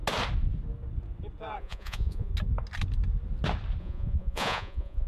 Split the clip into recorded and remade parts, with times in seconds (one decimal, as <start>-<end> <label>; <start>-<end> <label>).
0.0-1.6 recorded; 1.6-2.3 remade; 2.3-3.8 recorded; 3.8-5.1 remade